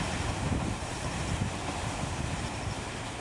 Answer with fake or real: fake